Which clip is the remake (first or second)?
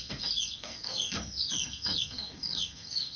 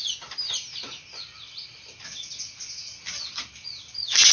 first